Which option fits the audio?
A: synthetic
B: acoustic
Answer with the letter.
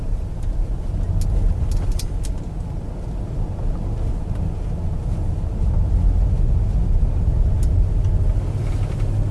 B